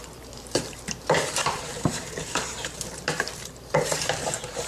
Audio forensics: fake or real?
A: fake